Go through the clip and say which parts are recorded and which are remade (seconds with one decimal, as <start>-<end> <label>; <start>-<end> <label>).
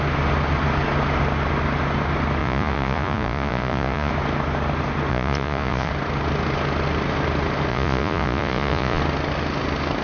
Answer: 0.0-2.4 recorded; 2.4-4.1 remade; 4.1-5.1 recorded; 5.1-5.9 remade; 5.9-7.7 recorded; 7.7-9.0 remade; 9.0-10.0 recorded